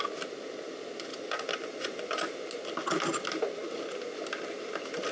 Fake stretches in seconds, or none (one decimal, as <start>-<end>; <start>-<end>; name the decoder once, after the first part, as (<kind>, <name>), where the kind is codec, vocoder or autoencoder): 1.1-2.4 (vocoder, BigVGAN v2)